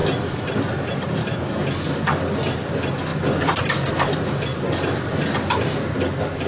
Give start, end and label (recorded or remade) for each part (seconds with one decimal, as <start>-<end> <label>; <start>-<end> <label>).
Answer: 0.0-6.5 recorded